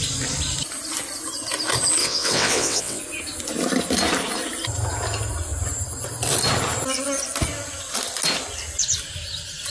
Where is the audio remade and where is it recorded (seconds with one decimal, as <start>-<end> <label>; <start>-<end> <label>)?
0.0-2.0 recorded; 2.0-3.0 remade; 3.0-9.7 recorded